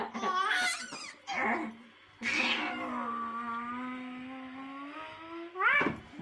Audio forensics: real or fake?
real